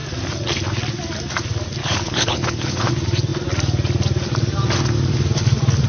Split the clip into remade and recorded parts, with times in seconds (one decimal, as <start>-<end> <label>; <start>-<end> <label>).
0.0-1.8 recorded; 1.8-2.9 remade; 2.9-5.9 recorded